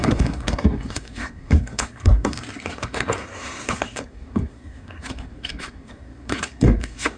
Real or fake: fake